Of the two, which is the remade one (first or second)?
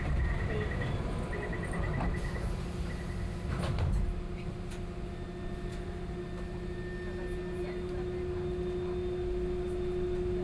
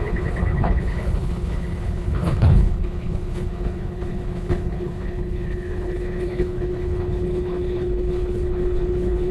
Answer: second